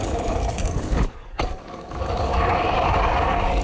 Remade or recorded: remade